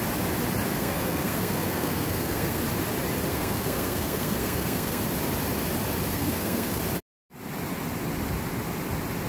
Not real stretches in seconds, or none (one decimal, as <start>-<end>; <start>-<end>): 0.7-2.6; 3.3-5.0; 6.1-6.8